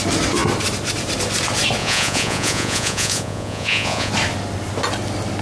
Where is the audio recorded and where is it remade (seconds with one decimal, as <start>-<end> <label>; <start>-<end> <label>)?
0.0-1.8 recorded; 1.8-4.1 remade; 4.1-5.4 recorded